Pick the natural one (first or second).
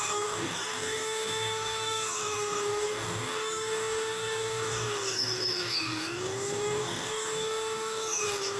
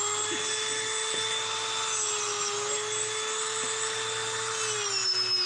second